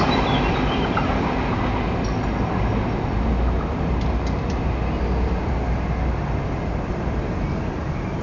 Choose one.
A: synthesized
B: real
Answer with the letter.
B